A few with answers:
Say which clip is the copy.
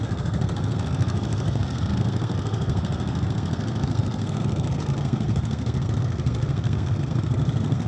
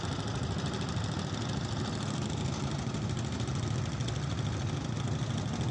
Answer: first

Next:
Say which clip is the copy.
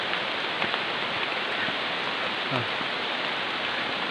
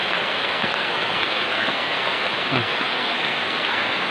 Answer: second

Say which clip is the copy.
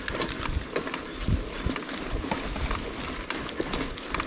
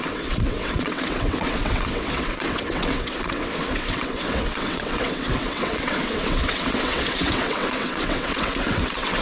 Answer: second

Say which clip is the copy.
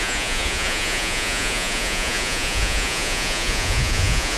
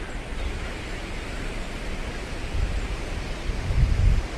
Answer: first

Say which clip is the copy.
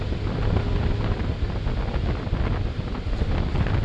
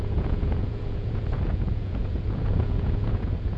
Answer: second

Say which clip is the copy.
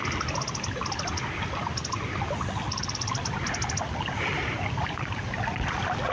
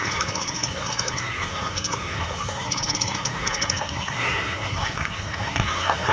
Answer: second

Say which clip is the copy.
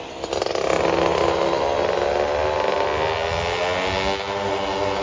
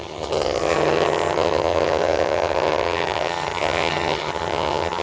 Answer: second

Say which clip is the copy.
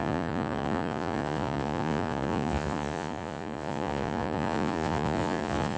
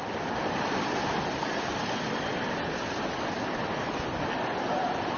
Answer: first